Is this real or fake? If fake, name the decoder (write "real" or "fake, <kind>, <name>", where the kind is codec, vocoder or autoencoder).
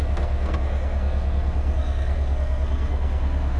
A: fake, codec, SNAC